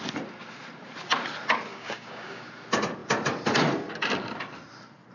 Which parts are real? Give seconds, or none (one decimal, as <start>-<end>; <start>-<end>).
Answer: 0.0-1.7; 2.5-5.1